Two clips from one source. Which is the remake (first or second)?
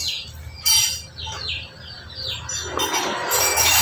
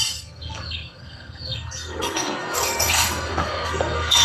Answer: second